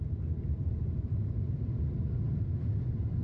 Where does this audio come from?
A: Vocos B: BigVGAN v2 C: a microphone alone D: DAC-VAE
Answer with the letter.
C